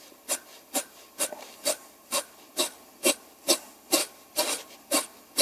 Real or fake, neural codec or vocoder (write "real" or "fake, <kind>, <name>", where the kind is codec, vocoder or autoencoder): real